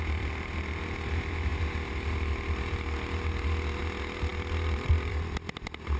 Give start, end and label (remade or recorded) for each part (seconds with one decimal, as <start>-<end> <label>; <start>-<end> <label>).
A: 0.0-6.0 recorded